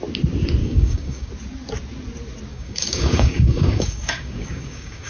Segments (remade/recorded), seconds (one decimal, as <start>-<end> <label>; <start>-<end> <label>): 0.0-0.6 recorded; 0.6-1.3 remade; 1.3-2.5 recorded; 2.5-5.1 remade